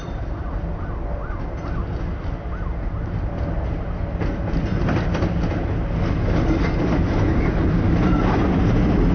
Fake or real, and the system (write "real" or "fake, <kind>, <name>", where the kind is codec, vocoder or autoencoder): real